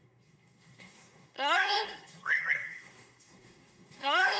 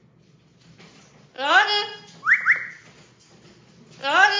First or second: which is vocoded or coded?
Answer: first